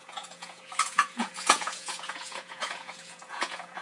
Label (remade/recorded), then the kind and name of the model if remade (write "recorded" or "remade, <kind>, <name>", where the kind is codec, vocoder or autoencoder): remade, vocoder, Vocos